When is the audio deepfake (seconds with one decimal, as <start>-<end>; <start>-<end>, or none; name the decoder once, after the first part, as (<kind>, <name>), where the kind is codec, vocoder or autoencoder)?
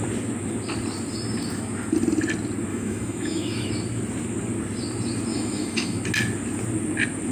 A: 2.7-3.7 (autoencoder, DAC-VAE); 5.3-6.0